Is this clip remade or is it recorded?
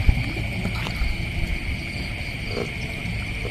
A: recorded